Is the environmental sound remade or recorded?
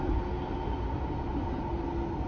recorded